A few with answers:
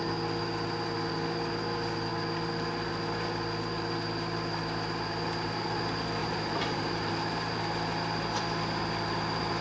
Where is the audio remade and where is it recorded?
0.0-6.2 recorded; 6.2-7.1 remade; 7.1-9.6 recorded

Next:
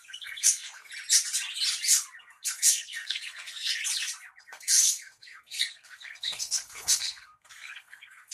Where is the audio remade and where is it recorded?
0.0-0.9 remade; 0.9-2.2 recorded; 2.2-3.8 remade; 3.8-4.4 recorded; 4.4-8.3 remade